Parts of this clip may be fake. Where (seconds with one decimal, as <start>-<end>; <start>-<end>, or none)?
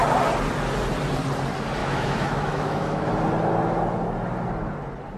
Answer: 1.8-3.1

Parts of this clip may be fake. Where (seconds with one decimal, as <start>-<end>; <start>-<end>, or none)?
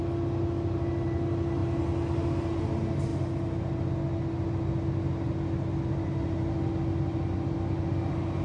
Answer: none